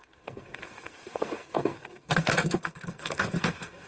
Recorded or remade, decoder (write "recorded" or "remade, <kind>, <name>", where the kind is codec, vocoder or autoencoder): remade, codec, SNAC